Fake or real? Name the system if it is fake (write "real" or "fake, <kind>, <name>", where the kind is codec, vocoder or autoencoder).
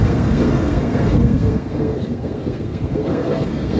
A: fake, codec, SNAC